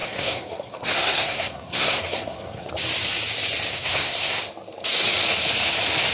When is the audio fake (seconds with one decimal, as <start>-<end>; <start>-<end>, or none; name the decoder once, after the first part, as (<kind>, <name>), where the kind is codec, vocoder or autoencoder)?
0.0-2.7 (codec, SNAC); 3.7-4.4